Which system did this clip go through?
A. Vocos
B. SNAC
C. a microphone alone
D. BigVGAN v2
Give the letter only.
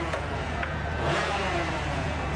A